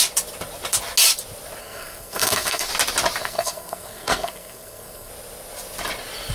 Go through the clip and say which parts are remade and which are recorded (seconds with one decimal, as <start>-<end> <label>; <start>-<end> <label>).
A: 0.0-1.6 recorded; 1.6-2.7 remade; 2.7-3.2 recorded; 3.2-5.1 remade; 5.1-6.3 recorded

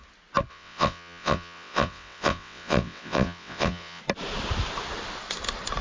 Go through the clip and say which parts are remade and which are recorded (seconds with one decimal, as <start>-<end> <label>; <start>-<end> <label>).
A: 0.0-0.5 recorded; 0.5-4.0 remade; 4.0-5.8 recorded

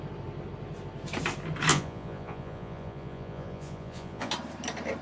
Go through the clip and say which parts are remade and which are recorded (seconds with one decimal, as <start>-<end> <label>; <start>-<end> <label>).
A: 0.0-1.7 recorded; 1.7-4.3 remade; 4.3-5.0 recorded

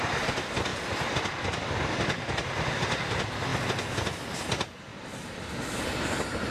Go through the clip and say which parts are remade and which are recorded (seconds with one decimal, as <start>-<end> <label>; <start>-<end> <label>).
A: 0.0-0.7 recorded; 0.7-2.4 remade; 2.4-3.5 recorded; 3.5-4.5 remade; 4.5-4.9 recorded; 4.9-5.4 remade; 5.4-6.5 recorded

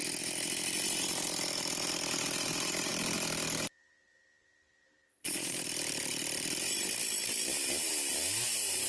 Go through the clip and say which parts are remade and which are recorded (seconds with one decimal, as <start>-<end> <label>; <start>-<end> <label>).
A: 0.0-5.1 recorded; 5.1-5.6 remade; 5.6-8.9 recorded

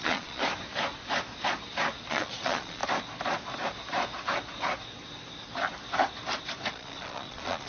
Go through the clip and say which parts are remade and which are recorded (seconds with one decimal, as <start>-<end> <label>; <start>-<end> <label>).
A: 0.0-0.4 remade; 0.4-2.1 recorded; 2.1-2.8 remade; 2.8-6.7 recorded; 6.7-7.7 remade

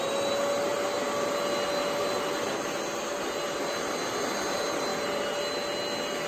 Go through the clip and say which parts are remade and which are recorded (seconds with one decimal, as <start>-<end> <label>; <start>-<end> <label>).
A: 0.0-6.3 recorded